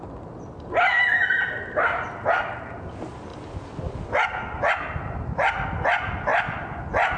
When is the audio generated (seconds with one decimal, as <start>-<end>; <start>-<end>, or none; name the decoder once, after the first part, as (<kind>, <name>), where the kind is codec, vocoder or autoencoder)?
none